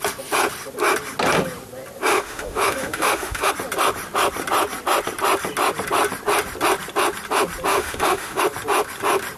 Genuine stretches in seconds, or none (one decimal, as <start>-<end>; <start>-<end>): 0.0-2.1; 3.5-7.7; 8.4-9.4